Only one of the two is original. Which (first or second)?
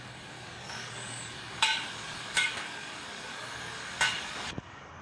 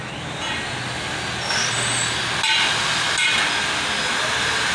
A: second